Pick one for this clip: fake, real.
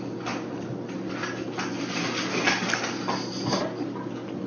real